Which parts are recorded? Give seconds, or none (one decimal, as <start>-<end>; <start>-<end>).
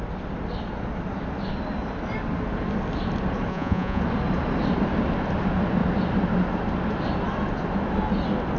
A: 0.0-3.5; 4.0-8.6